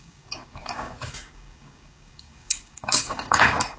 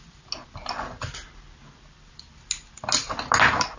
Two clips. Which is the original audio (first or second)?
second